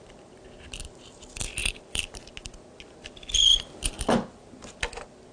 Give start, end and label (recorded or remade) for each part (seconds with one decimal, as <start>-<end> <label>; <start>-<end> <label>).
0.0-1.6 recorded; 1.6-2.2 remade; 2.2-5.3 recorded